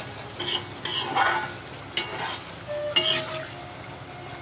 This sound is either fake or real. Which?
real